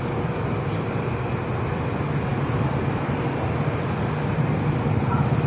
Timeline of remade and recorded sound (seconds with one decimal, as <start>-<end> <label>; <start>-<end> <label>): 0.0-2.3 recorded; 2.3-3.1 remade; 3.1-5.5 recorded